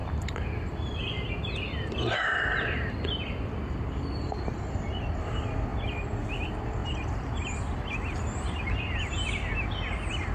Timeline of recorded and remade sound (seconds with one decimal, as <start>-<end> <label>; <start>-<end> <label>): 0.0-1.0 remade; 1.0-6.8 recorded; 6.8-8.6 remade; 8.6-10.3 recorded